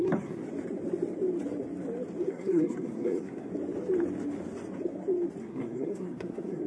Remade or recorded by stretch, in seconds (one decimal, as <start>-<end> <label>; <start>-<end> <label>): 0.0-0.4 remade; 0.4-2.3 recorded; 2.3-3.5 remade; 3.5-5.4 recorded; 5.4-6.7 remade